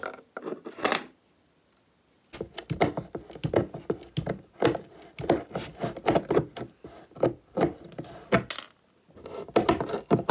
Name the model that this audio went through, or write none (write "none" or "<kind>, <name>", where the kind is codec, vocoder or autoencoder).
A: none